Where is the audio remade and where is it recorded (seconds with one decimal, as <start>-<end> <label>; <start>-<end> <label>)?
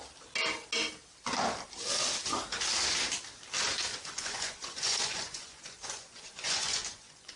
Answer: 0.0-3.9 recorded; 3.9-7.4 remade